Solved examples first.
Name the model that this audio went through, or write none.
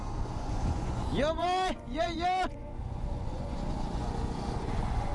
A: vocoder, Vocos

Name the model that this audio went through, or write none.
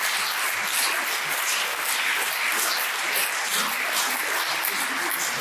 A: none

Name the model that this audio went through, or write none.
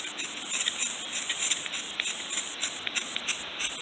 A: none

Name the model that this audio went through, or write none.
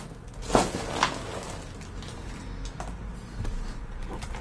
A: none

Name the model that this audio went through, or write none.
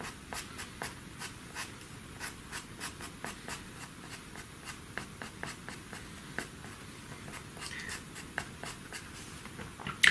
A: none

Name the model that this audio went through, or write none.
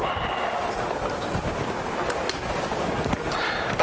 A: none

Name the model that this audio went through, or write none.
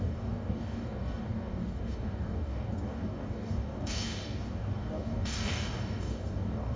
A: codec, DAC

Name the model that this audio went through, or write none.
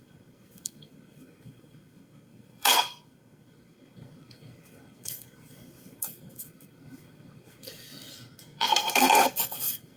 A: codec, SNAC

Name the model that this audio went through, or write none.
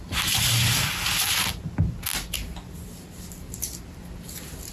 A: none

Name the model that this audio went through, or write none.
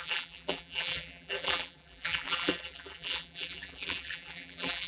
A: vocoder, BigVGAN v2